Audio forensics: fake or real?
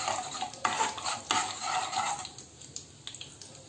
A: real